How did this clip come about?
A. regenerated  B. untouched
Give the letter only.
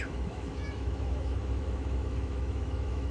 A